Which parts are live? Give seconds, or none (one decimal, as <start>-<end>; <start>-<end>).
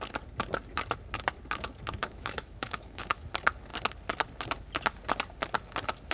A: 0.0-2.0; 3.2-6.1